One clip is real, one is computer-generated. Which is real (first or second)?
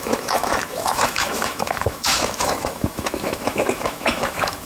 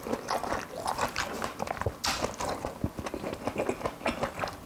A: second